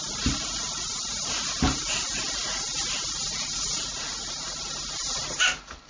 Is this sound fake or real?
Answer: real